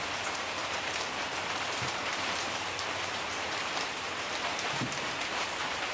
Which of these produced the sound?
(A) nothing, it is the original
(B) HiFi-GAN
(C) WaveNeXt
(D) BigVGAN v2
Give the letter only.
D